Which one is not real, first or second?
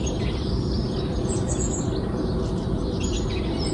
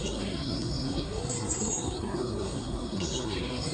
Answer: second